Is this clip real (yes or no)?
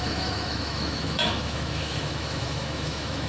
no